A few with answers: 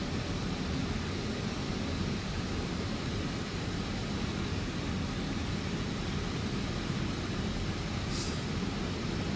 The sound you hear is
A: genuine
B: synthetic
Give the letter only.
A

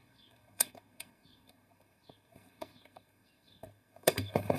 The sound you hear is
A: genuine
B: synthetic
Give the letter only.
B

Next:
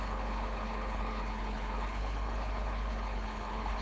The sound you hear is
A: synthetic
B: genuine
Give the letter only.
A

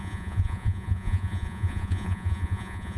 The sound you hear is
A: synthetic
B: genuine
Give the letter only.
A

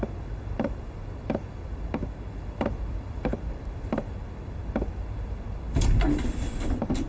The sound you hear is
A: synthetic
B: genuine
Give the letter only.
B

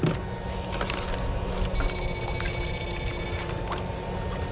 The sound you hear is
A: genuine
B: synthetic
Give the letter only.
A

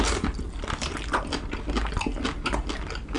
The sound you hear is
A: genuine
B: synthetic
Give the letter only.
A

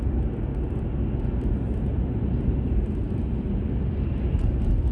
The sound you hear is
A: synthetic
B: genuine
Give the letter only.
B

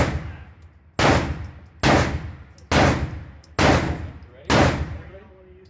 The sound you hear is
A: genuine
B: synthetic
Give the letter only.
A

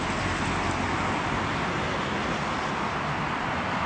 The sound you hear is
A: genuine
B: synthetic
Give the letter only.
A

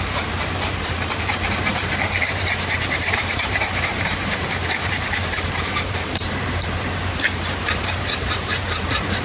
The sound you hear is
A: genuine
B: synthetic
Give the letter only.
B